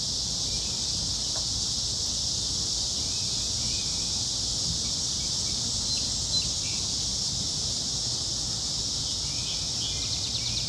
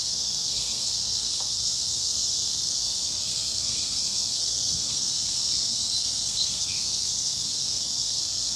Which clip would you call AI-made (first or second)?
second